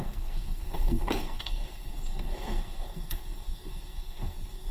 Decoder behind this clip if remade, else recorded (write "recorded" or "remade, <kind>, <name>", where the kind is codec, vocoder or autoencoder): remade, codec, SNAC